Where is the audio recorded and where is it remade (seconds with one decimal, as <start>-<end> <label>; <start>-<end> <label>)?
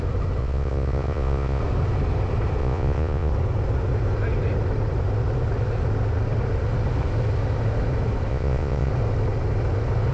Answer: 0.0-0.4 recorded; 0.4-1.6 remade; 1.6-2.6 recorded; 2.6-3.3 remade; 3.3-8.3 recorded; 8.3-8.9 remade; 8.9-10.1 recorded